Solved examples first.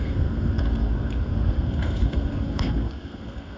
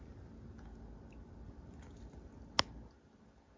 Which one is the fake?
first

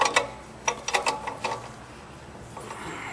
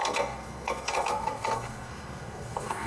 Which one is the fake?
second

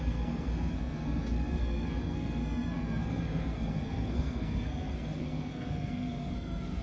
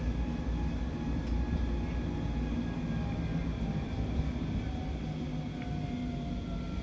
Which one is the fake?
first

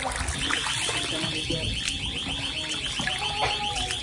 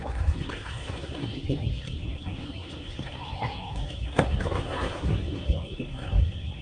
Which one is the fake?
second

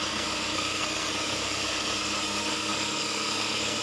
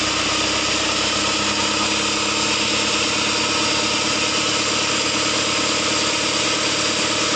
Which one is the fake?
first